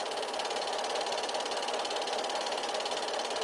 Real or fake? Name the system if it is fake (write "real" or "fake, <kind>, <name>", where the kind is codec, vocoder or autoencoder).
real